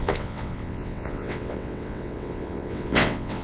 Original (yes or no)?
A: no